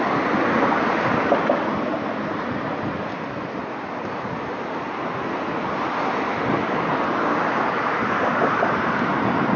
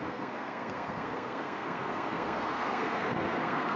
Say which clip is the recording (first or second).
first